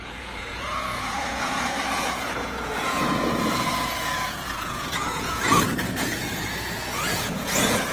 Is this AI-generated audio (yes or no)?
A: yes